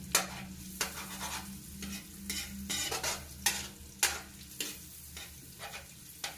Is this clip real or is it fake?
real